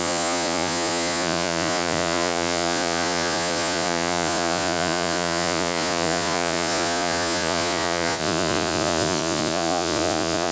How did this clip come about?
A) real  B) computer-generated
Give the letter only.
B